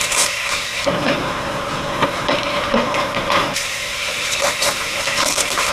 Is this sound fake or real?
fake